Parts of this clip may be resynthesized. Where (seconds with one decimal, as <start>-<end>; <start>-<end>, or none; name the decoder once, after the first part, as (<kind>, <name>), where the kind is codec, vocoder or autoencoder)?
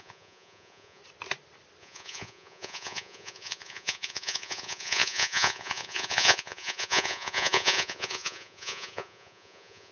0.0-1.0 (vocoder, Vocos); 1.8-9.9